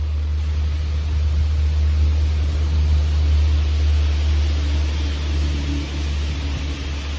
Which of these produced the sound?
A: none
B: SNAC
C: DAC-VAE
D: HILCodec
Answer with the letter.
A